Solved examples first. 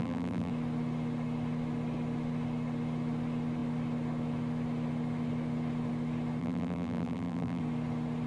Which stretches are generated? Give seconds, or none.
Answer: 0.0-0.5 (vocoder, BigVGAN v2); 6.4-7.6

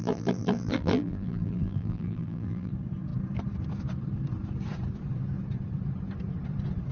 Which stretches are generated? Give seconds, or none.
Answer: 0.0-2.7 (vocoder, BigVGAN v2)

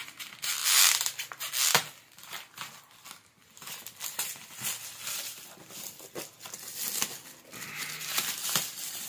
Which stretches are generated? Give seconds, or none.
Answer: none

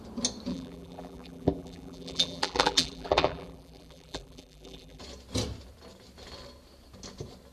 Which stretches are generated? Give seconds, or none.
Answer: 0.5-5.0 (vocoder, BigVGAN v2)

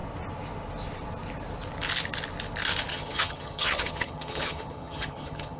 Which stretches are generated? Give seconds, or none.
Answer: 2.9-5.6 (vocoder, HiFi-GAN)

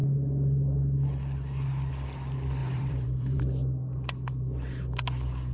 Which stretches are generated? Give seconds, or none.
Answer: 2.6-3.4 (vocoder, BigVGAN v2)

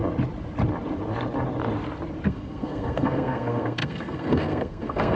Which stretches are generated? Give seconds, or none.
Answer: 2.3-5.2 (codec, SNAC)